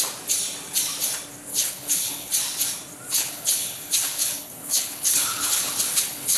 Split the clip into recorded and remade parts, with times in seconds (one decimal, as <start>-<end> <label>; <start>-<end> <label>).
0.0-1.5 recorded; 1.5-2.3 remade; 2.3-3.2 recorded; 3.2-6.4 remade